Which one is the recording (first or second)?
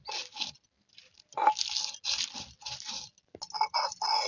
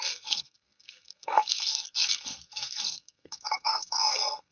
first